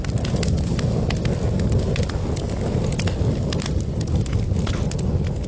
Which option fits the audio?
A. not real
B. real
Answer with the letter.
B